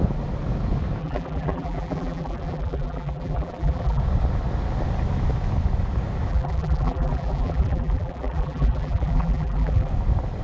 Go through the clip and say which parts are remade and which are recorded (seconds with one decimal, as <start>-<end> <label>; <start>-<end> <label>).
0.0-1.0 recorded; 1.0-4.0 remade; 4.0-6.3 recorded; 6.3-9.9 remade; 9.9-10.4 recorded